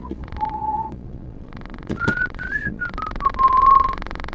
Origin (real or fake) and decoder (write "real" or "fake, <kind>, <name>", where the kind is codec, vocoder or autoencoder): fake, vocoder, Vocos